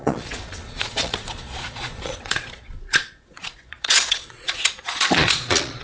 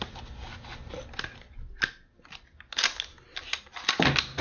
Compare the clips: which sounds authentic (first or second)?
second